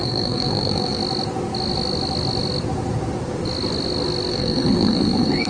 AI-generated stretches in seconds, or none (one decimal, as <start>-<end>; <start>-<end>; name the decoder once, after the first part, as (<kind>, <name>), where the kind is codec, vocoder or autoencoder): 0.0-1.0 (codec, SNAC); 4.3-5.5